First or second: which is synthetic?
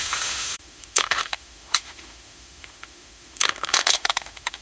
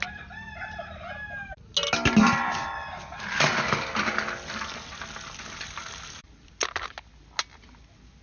first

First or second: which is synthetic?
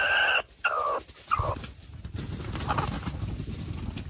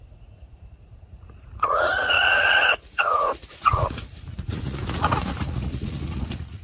second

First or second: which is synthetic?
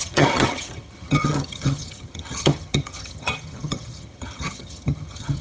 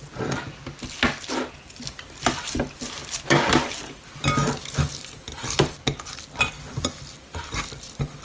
first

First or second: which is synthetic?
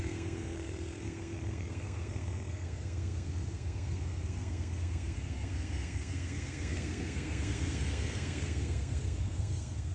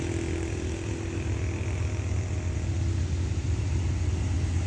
first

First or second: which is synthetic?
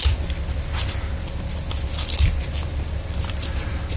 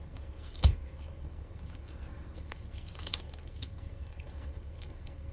second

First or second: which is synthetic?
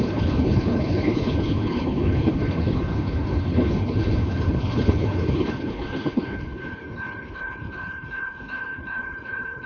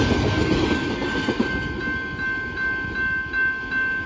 first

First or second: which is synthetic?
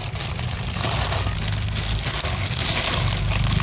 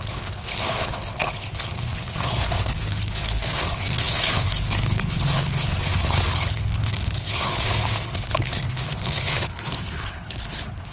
second